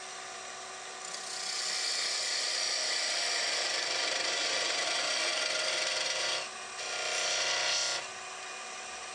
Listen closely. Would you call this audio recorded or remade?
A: recorded